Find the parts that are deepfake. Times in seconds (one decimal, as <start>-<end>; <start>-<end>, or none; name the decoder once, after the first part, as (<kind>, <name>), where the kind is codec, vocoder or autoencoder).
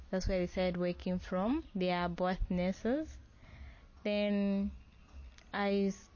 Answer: 1.0-1.6 (vocoder, Vocos)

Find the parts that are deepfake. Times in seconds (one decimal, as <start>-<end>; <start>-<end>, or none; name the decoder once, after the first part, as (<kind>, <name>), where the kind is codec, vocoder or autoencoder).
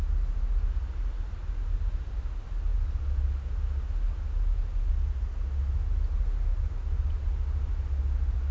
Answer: none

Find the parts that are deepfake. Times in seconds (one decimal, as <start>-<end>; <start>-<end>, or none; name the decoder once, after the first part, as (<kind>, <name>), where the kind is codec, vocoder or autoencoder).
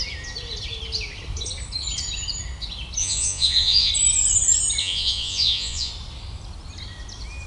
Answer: 3.0-3.9 (vocoder, Vocos); 4.8-5.9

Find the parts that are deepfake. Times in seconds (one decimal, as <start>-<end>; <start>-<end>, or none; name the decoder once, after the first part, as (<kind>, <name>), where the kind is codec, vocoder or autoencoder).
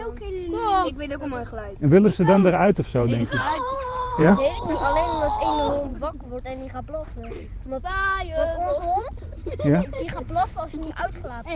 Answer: 2.1-4.3 (vocoder, Vocos)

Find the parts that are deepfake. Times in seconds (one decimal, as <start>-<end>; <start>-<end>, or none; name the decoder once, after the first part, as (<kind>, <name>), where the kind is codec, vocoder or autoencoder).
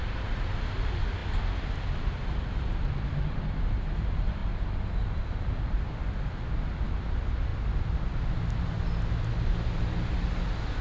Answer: none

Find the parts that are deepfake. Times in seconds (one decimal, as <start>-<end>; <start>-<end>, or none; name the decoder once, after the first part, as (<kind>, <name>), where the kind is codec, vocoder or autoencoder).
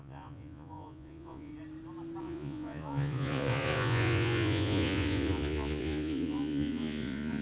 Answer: 0.0-1.5 (vocoder, Vocos); 2.2-7.4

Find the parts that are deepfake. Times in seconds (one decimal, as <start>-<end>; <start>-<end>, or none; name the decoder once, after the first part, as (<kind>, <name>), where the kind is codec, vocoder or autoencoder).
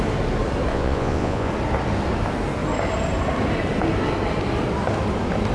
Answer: 0.7-1.5 (vocoder, Vocos)